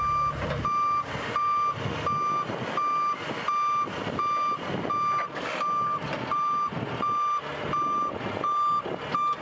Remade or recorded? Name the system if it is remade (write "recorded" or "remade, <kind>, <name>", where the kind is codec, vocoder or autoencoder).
recorded